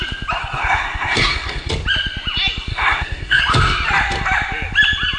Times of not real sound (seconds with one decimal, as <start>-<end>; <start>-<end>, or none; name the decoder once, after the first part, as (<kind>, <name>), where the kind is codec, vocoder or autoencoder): 0.4-1.7 (codec, SNAC); 2.7-3.4